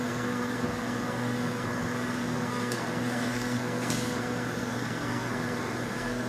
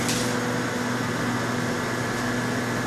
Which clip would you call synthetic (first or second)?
first